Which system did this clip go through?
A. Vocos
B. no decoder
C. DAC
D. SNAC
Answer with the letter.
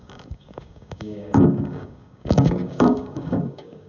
C